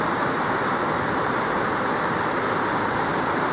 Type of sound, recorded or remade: recorded